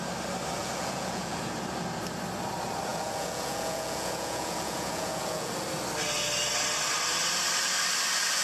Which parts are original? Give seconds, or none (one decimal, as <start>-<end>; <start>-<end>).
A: 0.0-0.6; 1.4-2.9; 5.5-8.4